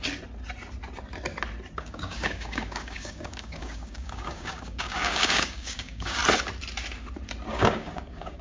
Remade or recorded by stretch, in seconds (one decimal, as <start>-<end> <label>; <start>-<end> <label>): 0.0-1.8 recorded; 1.8-6.2 remade; 6.2-7.5 recorded; 7.5-8.4 remade